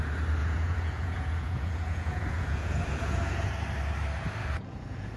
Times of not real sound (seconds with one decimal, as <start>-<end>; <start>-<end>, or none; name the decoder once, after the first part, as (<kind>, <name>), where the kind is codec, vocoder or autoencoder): 0.4-3.5 (vocoder, Vocos); 4.4-5.2